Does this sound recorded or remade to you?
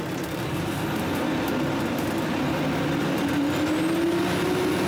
recorded